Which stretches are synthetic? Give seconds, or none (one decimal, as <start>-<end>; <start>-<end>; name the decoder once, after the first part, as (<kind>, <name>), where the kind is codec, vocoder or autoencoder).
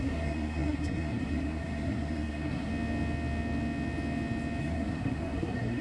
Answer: 0.0-2.7 (codec, SNAC); 4.6-5.8